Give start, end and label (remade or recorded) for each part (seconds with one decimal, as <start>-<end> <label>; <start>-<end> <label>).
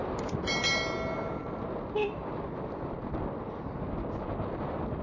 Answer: 0.0-5.0 recorded